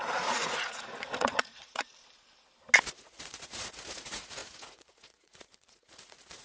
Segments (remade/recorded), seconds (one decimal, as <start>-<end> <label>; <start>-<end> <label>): 0.0-1.9 remade; 1.9-2.9 recorded; 2.9-6.4 remade